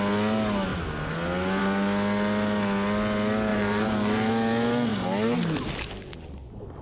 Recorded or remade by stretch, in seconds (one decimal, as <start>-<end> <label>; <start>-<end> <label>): 0.0-3.5 recorded; 3.5-4.3 remade; 4.3-6.8 recorded